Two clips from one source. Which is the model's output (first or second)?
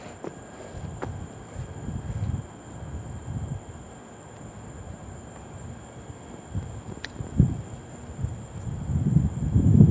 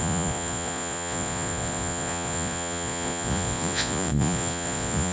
second